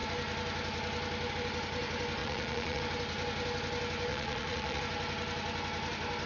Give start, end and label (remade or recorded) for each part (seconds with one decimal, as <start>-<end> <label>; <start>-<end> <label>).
0.0-2.2 recorded; 2.2-2.8 remade; 2.8-4.1 recorded; 4.1-4.8 remade; 4.8-6.3 recorded